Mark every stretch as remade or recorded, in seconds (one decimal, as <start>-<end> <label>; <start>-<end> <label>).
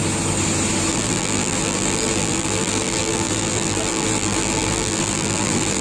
0.0-0.9 recorded; 0.9-5.8 remade